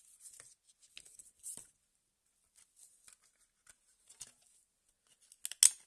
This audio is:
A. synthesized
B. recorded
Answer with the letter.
B